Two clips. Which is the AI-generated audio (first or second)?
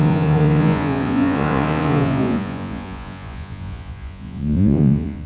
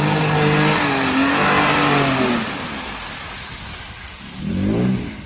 first